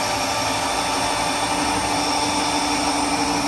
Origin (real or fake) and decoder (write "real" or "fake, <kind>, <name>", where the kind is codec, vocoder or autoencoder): real